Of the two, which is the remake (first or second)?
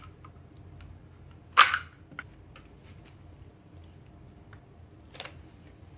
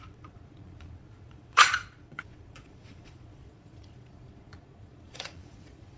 second